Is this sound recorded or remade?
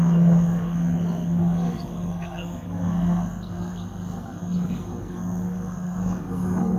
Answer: remade